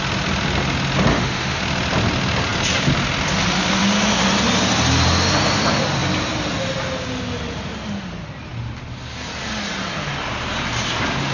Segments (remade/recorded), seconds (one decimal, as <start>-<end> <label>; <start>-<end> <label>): 0.0-1.1 recorded; 1.1-1.6 remade; 1.6-11.3 recorded